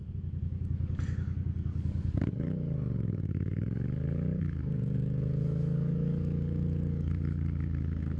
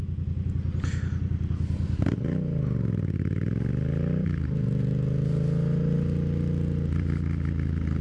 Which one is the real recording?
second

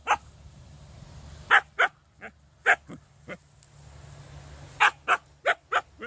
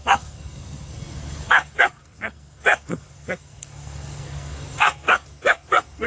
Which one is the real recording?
first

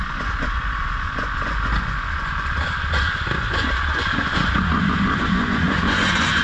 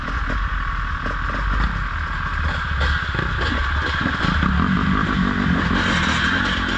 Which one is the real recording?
second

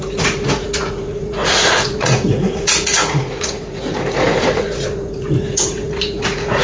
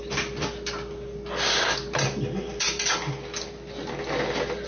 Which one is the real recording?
second